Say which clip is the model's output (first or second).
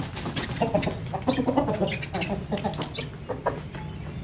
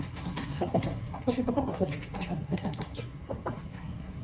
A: second